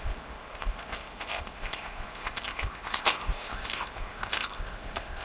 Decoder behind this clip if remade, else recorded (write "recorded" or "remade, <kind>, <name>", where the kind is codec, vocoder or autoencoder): remade, codec, ZipCodec